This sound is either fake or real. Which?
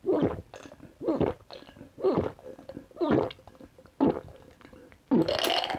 real